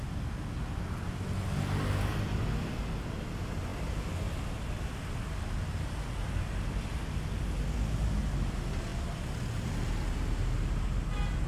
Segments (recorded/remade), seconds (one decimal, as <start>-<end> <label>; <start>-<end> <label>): 0.0-11.5 recorded